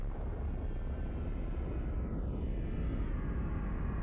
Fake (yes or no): no